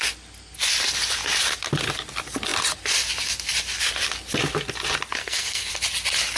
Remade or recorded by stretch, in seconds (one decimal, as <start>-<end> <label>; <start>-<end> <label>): 0.0-5.2 recorded; 5.2-5.7 remade; 5.7-6.4 recorded